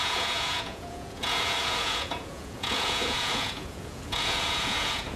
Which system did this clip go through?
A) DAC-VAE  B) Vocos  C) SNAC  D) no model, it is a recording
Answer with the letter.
B